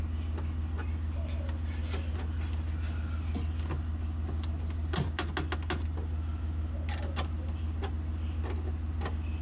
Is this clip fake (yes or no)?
no